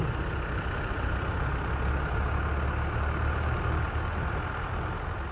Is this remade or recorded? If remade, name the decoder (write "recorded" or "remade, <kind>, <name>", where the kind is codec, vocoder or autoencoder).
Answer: recorded